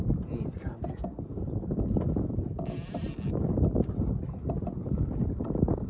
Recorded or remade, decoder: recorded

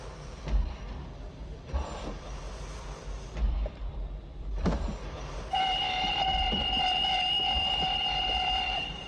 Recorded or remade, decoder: remade, vocoder, BigVGAN v2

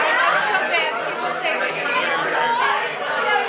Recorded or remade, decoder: recorded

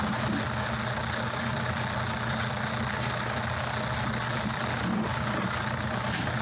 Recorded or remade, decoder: recorded